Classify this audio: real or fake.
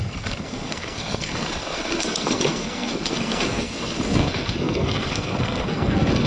fake